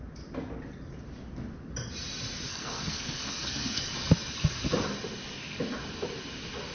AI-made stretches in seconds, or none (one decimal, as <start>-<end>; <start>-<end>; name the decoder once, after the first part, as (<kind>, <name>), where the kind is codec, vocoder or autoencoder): 2.5-3.9 (codec, SNAC)